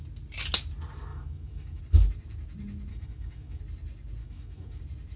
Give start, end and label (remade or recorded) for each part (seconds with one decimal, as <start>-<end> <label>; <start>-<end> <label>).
0.0-1.1 recorded; 1.1-1.8 remade; 1.8-2.9 recorded; 2.9-3.6 remade; 3.6-4.2 recorded; 4.2-4.8 remade; 4.8-5.2 recorded